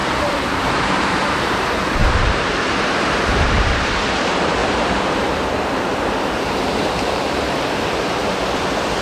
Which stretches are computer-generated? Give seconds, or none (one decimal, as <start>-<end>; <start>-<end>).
0.0-8.2